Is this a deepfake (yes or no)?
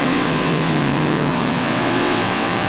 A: yes